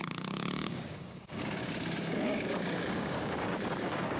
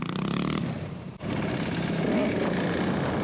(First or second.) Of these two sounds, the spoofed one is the first